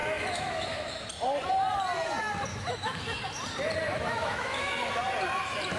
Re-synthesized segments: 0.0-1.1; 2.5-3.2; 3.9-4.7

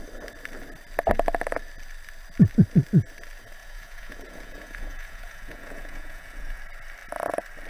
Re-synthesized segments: 3.6-6.6

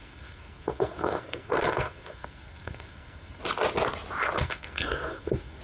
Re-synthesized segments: 0.0-3.4; 4.4-5.6

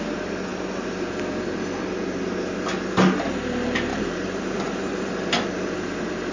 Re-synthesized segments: 3.9-5.1

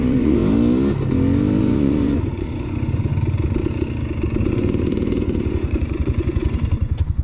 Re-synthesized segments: 0.0-0.4; 1.6-3.1; 4.4-7.2

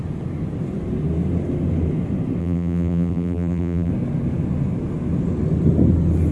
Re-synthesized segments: 2.4-3.9